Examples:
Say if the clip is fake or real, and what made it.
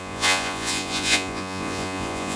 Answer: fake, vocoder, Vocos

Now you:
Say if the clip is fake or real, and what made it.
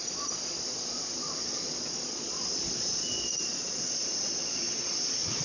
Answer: fake, vocoder, Vocos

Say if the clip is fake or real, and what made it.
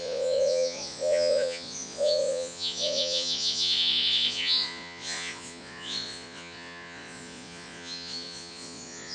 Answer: fake, vocoder, Vocos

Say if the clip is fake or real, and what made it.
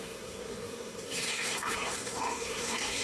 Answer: fake, codec, SNAC